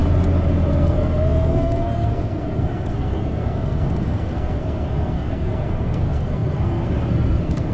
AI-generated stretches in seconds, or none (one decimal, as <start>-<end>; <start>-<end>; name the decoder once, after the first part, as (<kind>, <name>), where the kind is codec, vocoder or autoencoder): 0.7-7.7 (codec, SNAC)